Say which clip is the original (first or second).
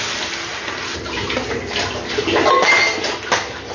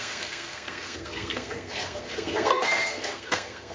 first